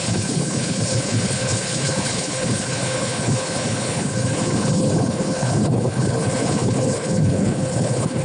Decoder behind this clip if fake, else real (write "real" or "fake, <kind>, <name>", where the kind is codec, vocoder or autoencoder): fake, codec, HILCodec